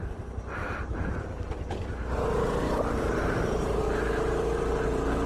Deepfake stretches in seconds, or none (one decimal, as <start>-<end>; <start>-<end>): 0.6-3.8

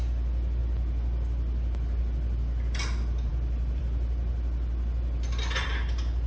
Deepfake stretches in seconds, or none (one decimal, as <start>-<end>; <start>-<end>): none

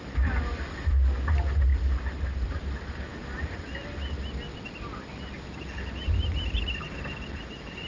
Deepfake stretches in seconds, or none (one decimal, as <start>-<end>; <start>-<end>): none